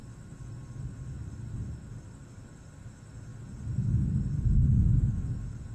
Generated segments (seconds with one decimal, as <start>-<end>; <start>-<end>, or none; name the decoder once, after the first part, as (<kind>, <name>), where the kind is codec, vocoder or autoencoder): none